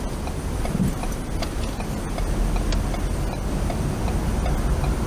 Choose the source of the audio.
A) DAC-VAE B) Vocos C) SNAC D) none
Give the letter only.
D